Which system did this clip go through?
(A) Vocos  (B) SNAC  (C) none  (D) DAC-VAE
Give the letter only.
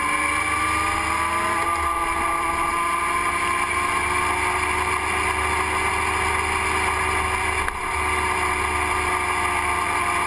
C